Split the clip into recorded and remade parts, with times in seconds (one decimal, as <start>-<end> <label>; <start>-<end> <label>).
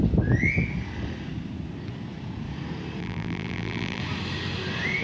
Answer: 0.0-3.0 recorded; 3.0-4.0 remade; 4.0-5.0 recorded